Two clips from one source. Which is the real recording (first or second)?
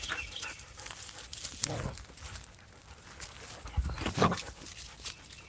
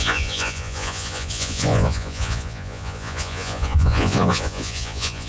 first